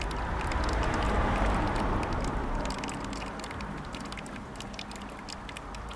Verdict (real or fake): real